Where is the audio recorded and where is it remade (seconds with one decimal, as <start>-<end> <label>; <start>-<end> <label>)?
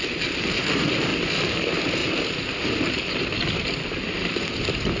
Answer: 0.0-5.0 recorded